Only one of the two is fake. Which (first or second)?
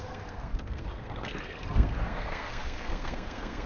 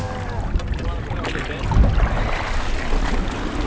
first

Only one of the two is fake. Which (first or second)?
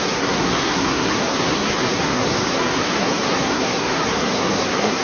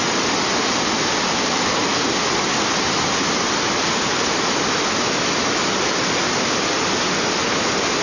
first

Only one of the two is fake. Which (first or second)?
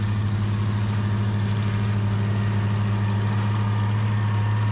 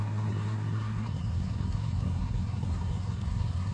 second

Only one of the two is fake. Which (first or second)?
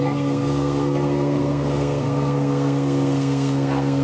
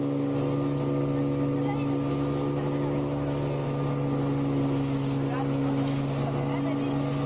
first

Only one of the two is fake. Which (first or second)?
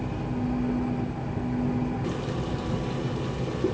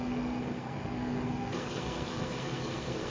second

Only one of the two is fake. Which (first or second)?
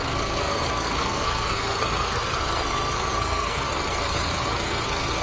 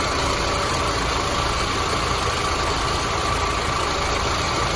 first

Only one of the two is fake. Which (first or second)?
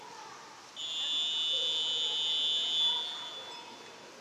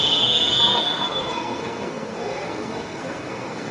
second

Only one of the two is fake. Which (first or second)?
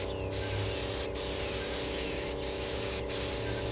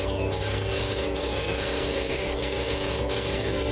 second